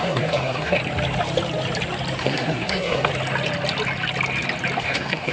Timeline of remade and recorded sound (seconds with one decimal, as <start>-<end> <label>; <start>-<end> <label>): 0.0-0.8 remade; 0.8-2.2 recorded; 2.2-3.1 remade; 3.1-4.8 recorded; 4.8-5.3 remade